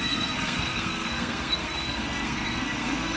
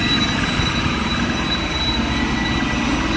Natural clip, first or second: second